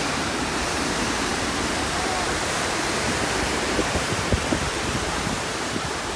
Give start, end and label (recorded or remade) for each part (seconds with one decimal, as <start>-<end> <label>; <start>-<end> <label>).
0.0-6.2 remade